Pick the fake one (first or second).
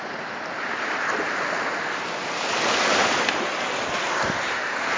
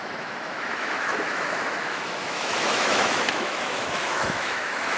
second